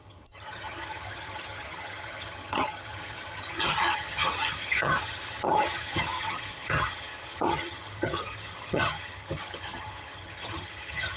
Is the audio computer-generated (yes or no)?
yes